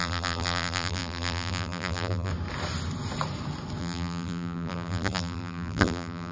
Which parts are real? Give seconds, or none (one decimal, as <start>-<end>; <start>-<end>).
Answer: 2.3-3.8